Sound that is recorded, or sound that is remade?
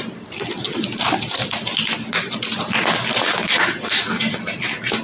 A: recorded